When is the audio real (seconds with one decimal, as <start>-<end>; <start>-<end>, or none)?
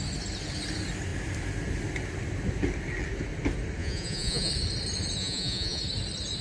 0.0-3.8; 4.5-5.2; 5.8-6.4